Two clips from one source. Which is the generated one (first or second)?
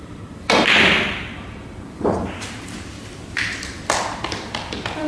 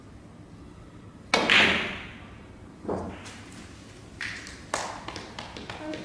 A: first